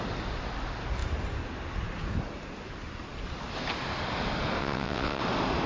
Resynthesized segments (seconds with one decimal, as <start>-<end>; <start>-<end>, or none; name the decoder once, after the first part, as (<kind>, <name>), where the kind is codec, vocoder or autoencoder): 4.6-5.2 (vocoder, WaveNeXt)